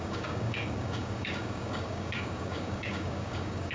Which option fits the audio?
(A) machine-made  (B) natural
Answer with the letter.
A